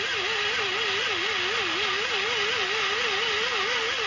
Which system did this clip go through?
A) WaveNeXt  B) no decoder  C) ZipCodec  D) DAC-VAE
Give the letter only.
B